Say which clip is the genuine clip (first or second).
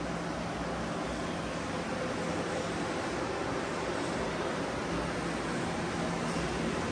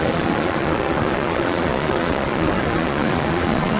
first